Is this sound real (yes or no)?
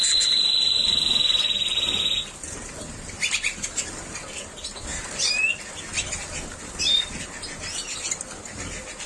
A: yes